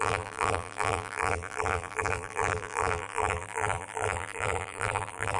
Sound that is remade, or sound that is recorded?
remade